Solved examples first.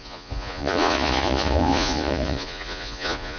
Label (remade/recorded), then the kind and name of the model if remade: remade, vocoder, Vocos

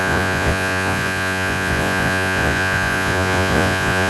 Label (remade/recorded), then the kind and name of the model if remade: remade, vocoder, Vocos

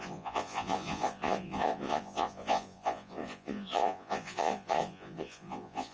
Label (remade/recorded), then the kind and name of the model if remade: remade, vocoder, Vocos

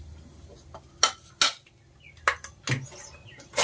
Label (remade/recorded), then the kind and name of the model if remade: recorded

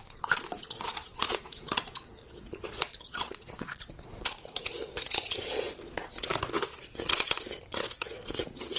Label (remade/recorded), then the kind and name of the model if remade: remade, vocoder, Vocos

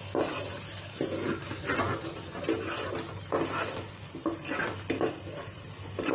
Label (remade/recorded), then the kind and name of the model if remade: recorded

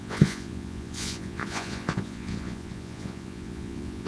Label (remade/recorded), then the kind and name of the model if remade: remade, vocoder, Vocos